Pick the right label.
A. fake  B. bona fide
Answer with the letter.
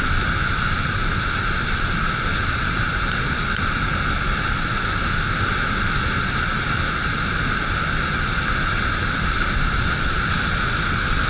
B